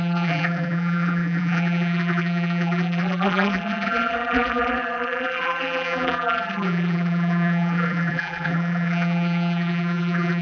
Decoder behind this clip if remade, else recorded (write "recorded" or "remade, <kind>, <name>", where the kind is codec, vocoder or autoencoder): remade, vocoder, BigVGAN v2